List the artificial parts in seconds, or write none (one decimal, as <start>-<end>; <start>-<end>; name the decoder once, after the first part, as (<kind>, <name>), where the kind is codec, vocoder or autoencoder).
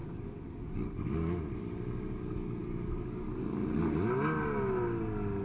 0.0-1.4 (codec, DAC); 2.6-3.3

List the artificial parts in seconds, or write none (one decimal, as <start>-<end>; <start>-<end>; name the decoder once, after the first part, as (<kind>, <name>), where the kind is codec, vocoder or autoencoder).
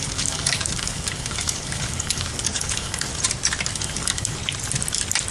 0.0-3.1 (codec, DAC); 3.7-4.4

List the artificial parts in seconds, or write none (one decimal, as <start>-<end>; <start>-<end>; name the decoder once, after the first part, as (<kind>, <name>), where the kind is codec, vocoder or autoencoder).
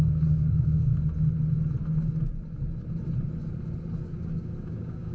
0.0-0.9 (codec, DAC); 4.0-5.1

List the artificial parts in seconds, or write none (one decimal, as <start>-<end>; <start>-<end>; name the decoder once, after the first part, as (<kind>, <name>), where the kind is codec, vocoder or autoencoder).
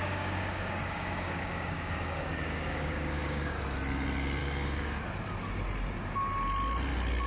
0.0-3.6 (codec, DAC); 4.4-5.1